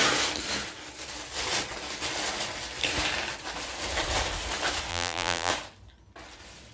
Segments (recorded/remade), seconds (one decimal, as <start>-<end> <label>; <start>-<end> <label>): 0.0-4.9 recorded; 4.9-5.5 remade; 5.5-6.7 recorded

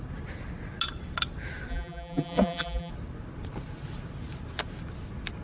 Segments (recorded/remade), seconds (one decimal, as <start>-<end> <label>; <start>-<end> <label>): 0.0-1.7 recorded; 1.7-2.9 remade; 2.9-5.4 recorded

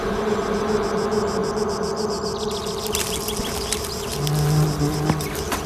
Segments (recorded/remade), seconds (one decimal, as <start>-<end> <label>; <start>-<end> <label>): 0.0-5.7 recorded

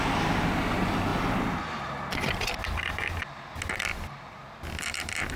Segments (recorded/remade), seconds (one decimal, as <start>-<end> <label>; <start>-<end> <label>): 0.0-3.9 recorded; 3.9-5.4 remade

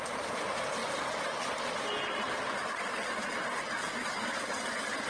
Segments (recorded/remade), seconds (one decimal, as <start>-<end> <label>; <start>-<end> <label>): 0.0-0.8 remade; 0.8-3.9 recorded; 3.9-5.1 remade

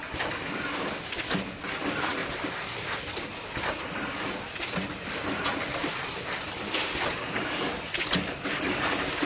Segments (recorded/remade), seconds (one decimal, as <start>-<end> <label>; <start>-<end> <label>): 0.0-9.3 remade

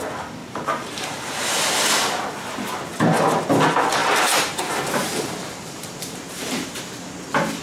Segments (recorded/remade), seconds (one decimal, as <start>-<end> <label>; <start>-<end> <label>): 0.0-0.4 recorded; 0.4-1.3 remade; 1.3-4.0 recorded; 4.0-6.8 remade; 6.8-7.6 recorded